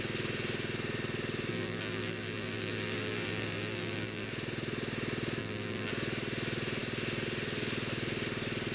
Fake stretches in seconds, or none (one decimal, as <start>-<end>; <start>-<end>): 1.5-4.3; 5.4-5.9